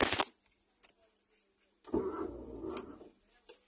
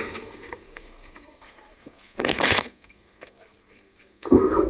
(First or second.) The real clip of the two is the first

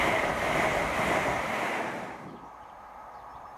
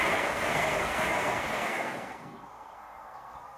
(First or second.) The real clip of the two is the first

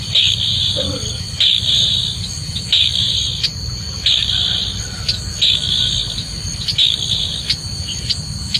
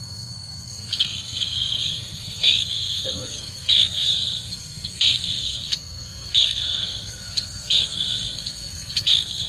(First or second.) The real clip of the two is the first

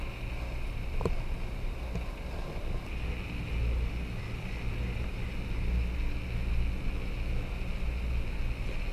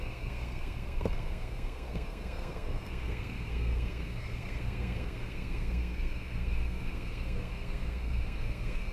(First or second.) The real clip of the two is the first